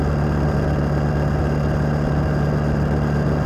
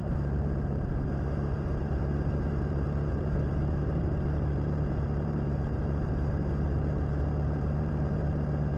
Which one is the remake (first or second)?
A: second